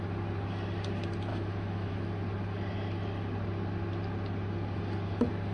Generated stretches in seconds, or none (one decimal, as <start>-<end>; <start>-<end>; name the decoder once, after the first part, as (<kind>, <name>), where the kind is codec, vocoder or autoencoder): 1.3-1.9 (autoencoder, DAC-VAE)